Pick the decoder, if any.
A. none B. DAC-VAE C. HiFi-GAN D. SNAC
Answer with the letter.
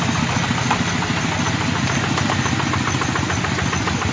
A